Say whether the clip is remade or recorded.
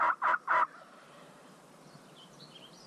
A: remade